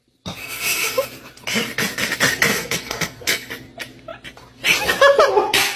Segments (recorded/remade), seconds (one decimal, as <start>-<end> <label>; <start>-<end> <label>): 0.0-0.4 recorded; 0.4-1.1 remade; 1.1-2.5 recorded; 2.5-3.5 remade; 3.5-5.8 recorded